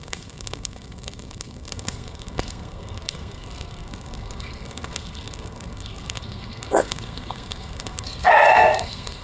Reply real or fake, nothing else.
fake